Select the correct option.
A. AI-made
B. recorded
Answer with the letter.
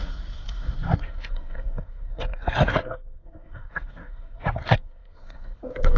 A